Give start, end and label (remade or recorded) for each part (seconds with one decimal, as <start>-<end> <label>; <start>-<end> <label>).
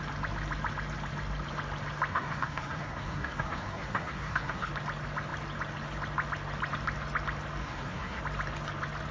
0.0-2.1 recorded; 2.1-4.7 remade; 4.7-7.6 recorded; 7.6-8.2 remade; 8.2-9.1 recorded